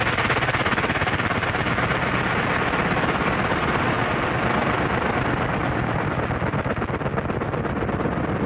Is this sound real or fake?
real